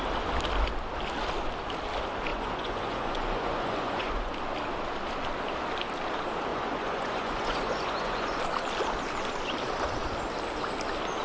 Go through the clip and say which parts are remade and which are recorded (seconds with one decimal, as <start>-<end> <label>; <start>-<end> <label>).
0.0-2.3 recorded; 2.3-4.3 remade; 4.3-6.5 recorded; 6.5-8.4 remade; 8.4-11.2 recorded